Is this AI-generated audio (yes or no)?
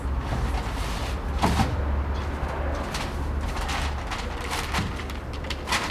no